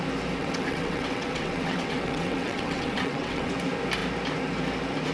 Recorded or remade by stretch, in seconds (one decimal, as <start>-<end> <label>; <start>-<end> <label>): 0.0-0.4 recorded; 0.4-3.5 remade; 3.5-5.1 recorded